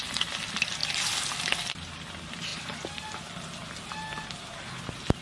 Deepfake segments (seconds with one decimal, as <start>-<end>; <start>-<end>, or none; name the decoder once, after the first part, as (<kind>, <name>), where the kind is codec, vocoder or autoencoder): 0.0-0.8 (vocoder, BigVGAN v2); 1.3-3.6; 4.2-5.2